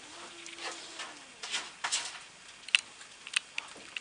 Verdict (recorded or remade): recorded